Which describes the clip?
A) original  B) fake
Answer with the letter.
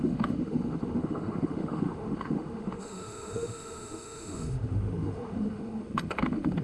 B